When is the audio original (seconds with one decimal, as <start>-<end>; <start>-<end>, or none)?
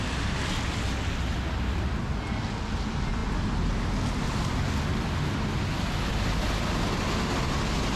0.0-8.0